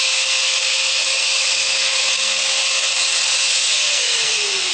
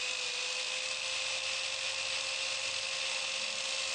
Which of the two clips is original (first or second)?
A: second